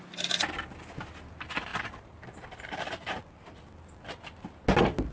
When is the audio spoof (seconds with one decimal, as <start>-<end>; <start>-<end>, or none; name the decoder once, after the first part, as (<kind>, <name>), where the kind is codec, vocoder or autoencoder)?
1.7-2.8 (vocoder, BigVGAN v2)